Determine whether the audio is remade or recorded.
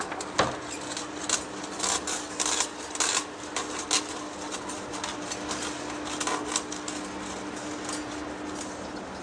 recorded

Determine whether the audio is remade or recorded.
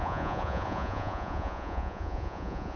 remade